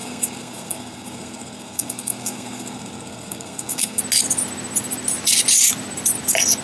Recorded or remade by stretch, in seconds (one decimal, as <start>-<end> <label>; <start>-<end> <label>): 0.0-4.0 remade; 4.0-6.6 recorded